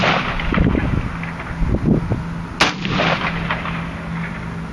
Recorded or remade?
recorded